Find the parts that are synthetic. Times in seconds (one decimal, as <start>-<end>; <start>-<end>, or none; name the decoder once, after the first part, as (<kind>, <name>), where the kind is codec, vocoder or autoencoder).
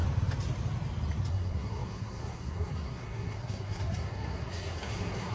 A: 1.3-5.3 (codec, SNAC)